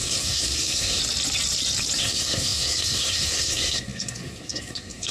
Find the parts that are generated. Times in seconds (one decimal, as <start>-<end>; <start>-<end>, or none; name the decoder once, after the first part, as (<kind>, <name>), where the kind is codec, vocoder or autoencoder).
0.0-1.0 (codec, SNAC); 2.0-5.1